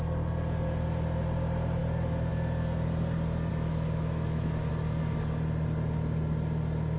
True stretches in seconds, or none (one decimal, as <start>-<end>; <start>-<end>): 0.0-3.5; 4.7-7.0